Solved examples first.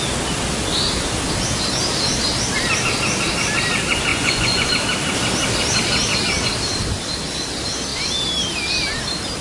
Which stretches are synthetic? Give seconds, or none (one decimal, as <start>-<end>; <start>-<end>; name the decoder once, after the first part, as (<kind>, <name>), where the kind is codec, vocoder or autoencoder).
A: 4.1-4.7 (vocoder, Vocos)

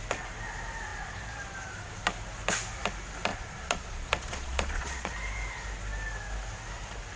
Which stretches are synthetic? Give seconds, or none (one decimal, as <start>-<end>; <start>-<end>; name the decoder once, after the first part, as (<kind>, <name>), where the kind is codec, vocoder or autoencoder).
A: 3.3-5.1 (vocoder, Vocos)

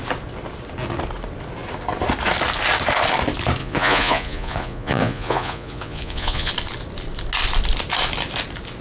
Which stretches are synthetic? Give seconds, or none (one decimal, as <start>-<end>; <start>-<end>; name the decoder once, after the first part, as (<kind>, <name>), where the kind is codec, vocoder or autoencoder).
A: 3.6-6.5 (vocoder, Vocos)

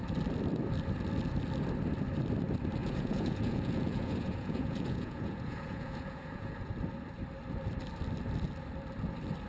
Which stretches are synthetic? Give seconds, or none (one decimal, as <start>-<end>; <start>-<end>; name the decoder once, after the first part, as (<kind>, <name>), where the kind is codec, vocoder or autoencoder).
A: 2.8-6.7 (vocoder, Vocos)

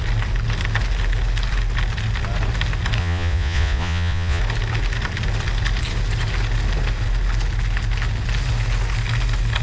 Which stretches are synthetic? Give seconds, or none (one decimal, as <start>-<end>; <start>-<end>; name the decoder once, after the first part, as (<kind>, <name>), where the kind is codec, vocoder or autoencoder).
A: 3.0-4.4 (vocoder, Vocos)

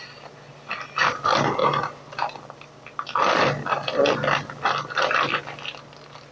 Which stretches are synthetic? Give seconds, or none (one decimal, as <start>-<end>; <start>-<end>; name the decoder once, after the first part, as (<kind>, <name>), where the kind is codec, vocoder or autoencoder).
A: none

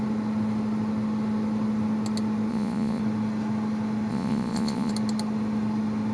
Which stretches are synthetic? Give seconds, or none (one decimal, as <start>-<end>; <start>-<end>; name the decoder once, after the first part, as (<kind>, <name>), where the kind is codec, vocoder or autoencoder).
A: 2.5-3.0 (vocoder, Vocos); 4.1-4.9